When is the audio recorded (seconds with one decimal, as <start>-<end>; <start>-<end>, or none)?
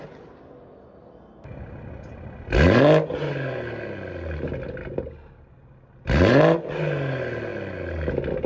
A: 0.0-8.5